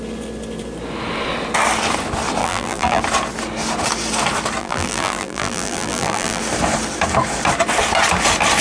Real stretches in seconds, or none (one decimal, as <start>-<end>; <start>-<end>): 0.0-2.4; 3.0-4.6; 6.4-8.6